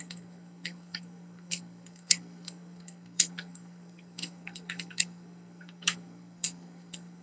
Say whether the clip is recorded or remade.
remade